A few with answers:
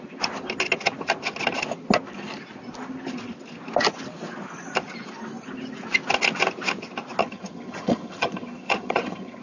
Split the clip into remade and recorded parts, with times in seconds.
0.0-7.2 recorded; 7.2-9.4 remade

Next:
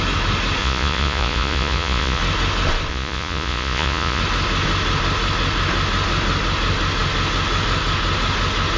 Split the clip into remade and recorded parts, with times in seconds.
0.0-0.6 recorded; 0.6-2.2 remade; 2.2-2.9 recorded; 2.9-4.2 remade; 4.2-8.8 recorded